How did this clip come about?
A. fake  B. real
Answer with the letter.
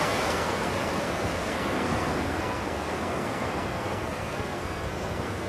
A